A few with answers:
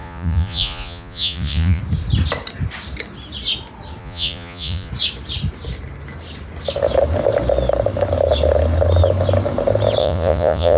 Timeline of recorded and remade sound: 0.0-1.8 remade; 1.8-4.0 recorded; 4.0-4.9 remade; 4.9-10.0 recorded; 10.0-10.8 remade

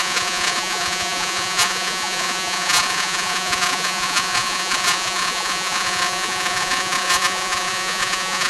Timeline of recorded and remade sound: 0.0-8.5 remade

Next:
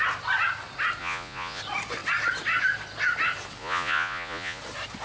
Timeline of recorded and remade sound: 0.0-1.0 recorded; 1.0-1.6 remade; 1.6-3.6 recorded; 3.6-4.6 remade; 4.6-5.0 recorded

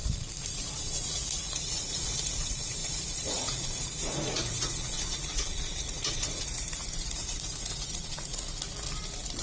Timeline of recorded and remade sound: 0.0-0.6 recorded; 0.6-8.3 remade; 8.3-9.4 recorded

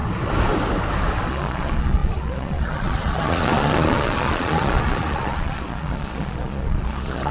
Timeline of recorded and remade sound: 0.0-1.3 recorded; 1.3-7.3 remade

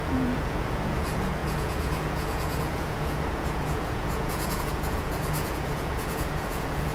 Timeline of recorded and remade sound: 0.0-6.9 remade

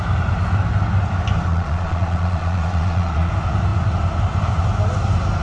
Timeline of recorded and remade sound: 0.0-1.5 recorded; 1.5-3.3 remade; 3.3-5.4 recorded